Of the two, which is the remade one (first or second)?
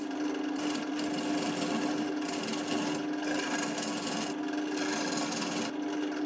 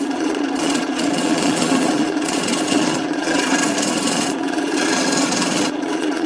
second